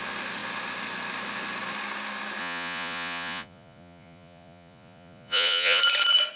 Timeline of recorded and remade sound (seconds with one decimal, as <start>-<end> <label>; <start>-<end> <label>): 0.0-2.4 recorded; 2.4-5.8 remade; 5.8-6.4 recorded